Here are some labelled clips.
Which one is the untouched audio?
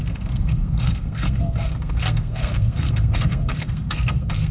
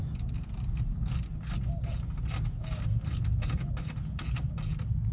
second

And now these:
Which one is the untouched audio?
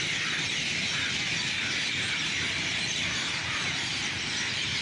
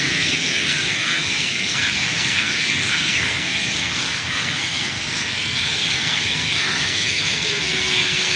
first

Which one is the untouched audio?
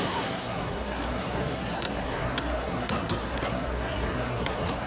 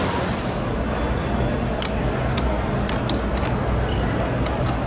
second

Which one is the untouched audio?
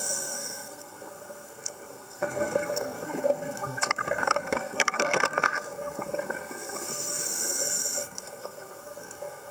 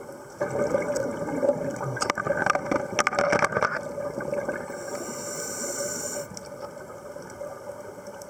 second